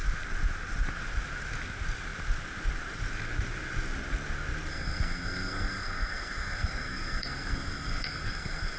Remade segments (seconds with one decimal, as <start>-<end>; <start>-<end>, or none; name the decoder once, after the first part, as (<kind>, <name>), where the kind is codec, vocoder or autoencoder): 4.7-8.8 (codec, SNAC)